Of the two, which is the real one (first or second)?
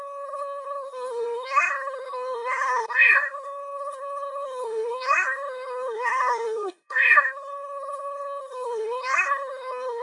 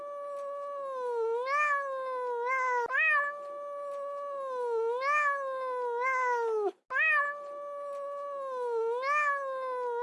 second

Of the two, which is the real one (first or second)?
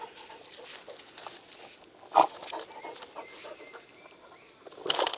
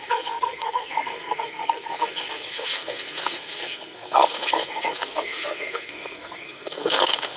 first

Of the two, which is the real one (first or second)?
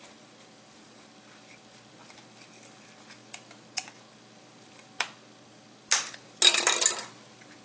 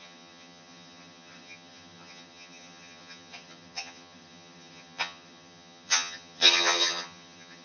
first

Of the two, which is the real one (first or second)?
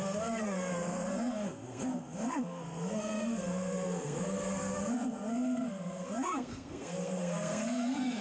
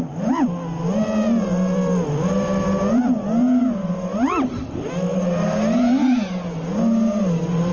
second